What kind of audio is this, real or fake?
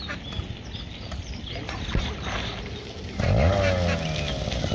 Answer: real